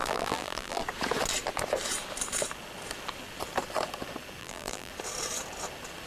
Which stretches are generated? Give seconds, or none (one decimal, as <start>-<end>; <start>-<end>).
0.0-0.8; 4.4-4.9